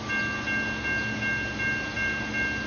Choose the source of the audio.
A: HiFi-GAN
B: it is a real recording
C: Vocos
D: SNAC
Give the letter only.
B